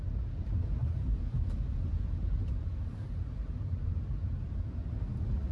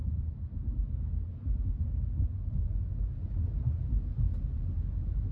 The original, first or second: second